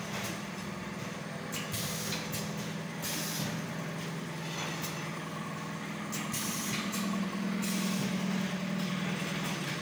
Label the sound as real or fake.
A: real